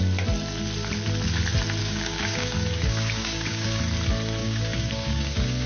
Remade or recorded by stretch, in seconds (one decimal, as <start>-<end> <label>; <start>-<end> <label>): 0.0-1.8 recorded; 1.8-3.8 remade; 3.8-4.4 recorded; 4.4-5.7 remade